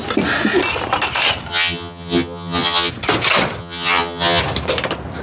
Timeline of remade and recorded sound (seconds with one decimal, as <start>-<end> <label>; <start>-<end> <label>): 0.0-1.5 recorded; 1.5-2.9 remade; 2.9-3.6 recorded; 3.6-4.4 remade; 4.4-5.2 recorded